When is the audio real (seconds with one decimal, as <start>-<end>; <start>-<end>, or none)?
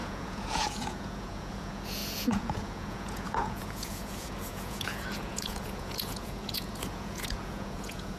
none